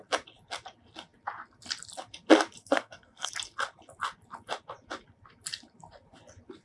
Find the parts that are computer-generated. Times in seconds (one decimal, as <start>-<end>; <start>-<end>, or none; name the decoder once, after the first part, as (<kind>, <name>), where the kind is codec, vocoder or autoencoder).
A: 2.6-3.3 (codec, SNAC)